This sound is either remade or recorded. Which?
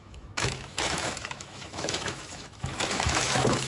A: remade